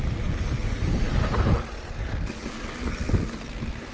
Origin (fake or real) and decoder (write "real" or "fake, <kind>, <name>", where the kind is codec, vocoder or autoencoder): real